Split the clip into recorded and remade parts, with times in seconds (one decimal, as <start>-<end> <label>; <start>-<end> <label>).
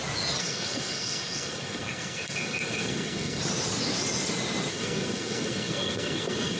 0.0-0.4 recorded; 0.4-3.4 remade; 3.4-4.7 recorded; 4.7-6.6 remade